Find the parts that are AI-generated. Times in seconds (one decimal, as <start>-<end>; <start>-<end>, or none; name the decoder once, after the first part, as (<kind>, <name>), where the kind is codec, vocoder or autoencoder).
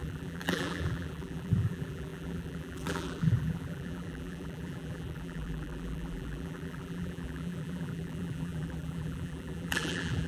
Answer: 0.0-10.3 (vocoder, BigVGAN v2)